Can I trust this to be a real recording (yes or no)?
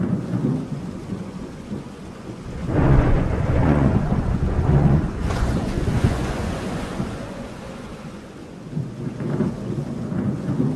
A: no